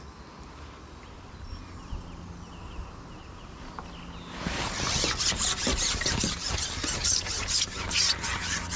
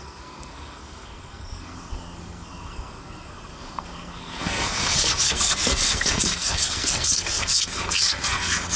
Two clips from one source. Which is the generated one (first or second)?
second